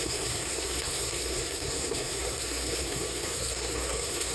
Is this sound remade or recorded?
remade